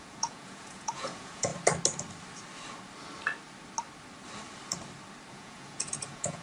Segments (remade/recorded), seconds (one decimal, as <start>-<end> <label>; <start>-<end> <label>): 0.0-1.5 remade; 1.5-5.3 recorded; 5.3-6.4 remade